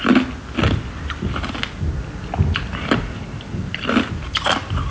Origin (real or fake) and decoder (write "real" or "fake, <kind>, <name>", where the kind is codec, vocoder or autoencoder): real